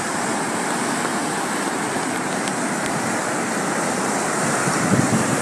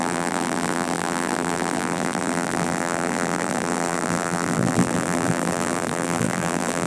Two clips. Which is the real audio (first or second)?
first